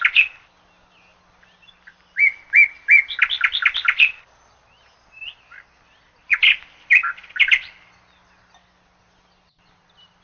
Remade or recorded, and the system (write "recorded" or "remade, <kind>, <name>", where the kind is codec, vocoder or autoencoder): recorded